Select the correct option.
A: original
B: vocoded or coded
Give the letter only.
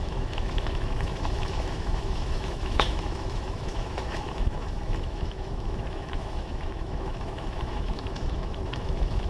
B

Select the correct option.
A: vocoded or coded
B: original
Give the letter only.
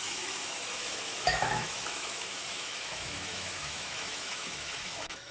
A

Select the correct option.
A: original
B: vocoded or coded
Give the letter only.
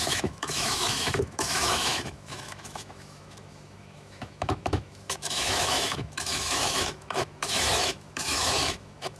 B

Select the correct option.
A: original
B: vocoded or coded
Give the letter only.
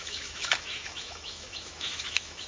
B